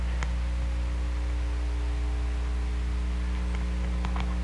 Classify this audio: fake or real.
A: real